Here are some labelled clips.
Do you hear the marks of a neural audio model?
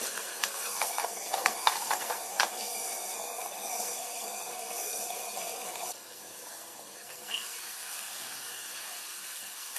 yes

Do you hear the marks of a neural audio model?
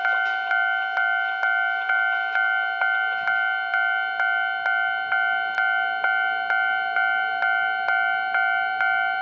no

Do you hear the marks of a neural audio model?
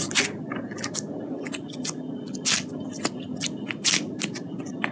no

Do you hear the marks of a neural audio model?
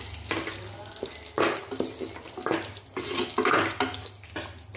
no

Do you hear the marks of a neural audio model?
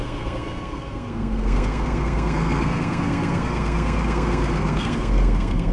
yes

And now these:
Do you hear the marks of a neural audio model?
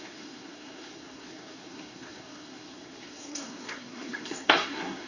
yes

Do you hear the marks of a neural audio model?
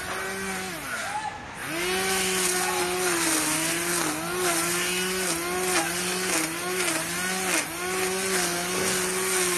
no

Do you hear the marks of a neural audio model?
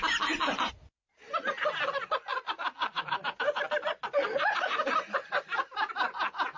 no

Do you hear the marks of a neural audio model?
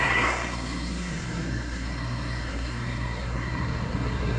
yes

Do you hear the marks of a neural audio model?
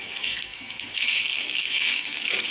yes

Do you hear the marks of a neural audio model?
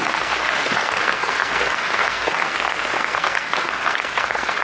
yes